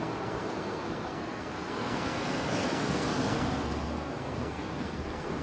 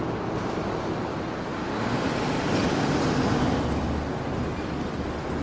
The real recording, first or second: second